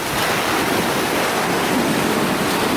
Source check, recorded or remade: recorded